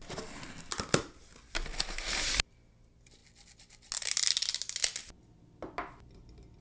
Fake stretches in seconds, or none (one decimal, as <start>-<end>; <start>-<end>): none